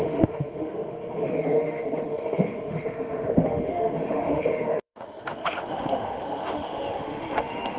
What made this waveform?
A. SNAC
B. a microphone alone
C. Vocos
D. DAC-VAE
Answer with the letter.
D